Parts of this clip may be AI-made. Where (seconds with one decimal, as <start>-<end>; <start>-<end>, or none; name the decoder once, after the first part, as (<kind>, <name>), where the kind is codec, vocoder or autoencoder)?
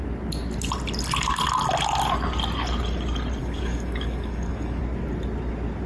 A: 3.4-4.8 (codec, DAC)